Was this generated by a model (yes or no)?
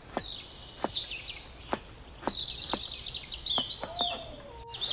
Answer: no